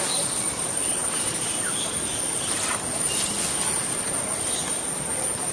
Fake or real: real